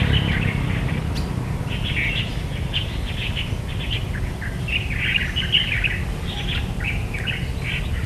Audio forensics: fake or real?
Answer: real